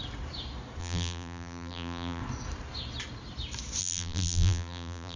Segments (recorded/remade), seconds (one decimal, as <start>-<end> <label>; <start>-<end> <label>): 0.0-0.8 recorded; 0.8-2.2 remade; 2.2-3.8 recorded; 3.8-5.2 remade

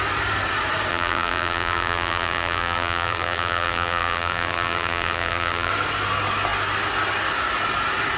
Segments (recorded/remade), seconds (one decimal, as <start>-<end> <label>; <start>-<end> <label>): 0.0-0.9 recorded; 0.9-5.7 remade; 5.7-8.2 recorded